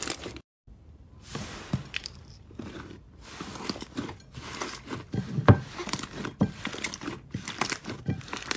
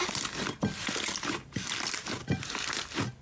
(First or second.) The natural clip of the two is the second